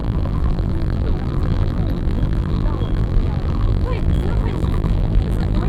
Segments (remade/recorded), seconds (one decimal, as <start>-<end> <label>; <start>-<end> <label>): 0.0-5.7 remade